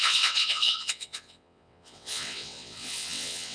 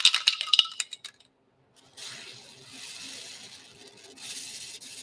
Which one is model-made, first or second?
first